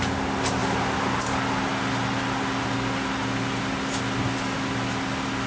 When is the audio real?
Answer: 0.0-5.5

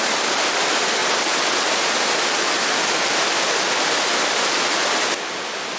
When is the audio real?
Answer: 0.0-5.8

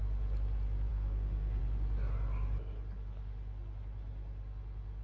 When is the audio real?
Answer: 0.0-0.9; 1.6-5.0

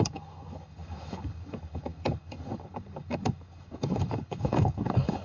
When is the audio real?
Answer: none

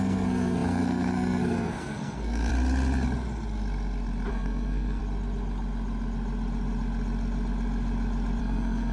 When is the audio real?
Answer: 2.5-4.3; 5.0-8.4

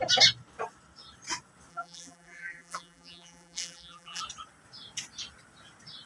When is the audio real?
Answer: 0.0-1.7; 4.2-6.1

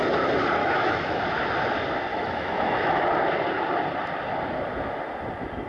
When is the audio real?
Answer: 0.0-0.6; 1.2-2.1; 3.0-5.7

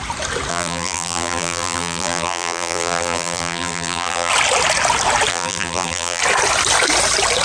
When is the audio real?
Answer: 0.0-0.5; 4.3-5.3; 6.2-7.4